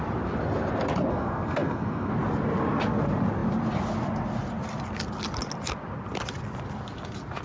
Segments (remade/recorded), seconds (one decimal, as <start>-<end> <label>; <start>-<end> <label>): 0.0-1.1 recorded; 1.1-2.1 remade; 2.1-7.4 recorded